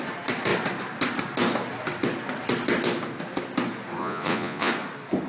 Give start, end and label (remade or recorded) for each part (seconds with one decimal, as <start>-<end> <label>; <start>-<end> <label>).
0.0-4.0 recorded; 4.0-4.7 remade; 4.7-5.3 recorded